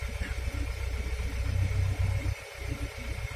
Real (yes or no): yes